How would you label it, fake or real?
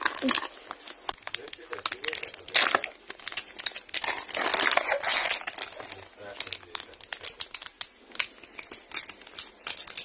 real